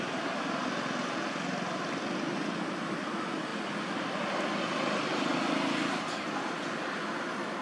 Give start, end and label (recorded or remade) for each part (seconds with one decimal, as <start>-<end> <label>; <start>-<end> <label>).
0.0-3.5 recorded; 3.5-4.2 remade; 4.2-7.6 recorded